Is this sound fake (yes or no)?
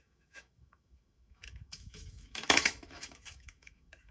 yes